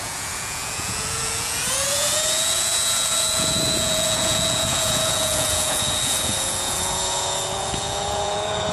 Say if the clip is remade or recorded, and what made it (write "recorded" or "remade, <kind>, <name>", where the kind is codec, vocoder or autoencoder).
remade, vocoder, Vocos